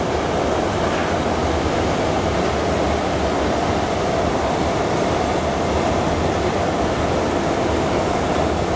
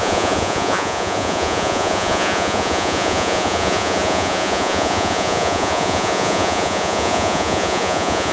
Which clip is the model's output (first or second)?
second